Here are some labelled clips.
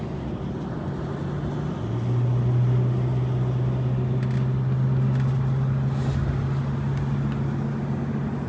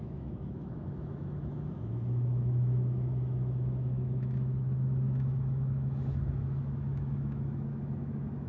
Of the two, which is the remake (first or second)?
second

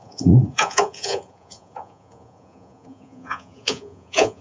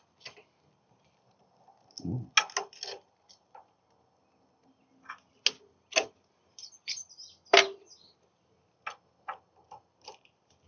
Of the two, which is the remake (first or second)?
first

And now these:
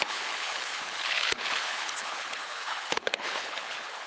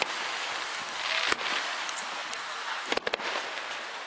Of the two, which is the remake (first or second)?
first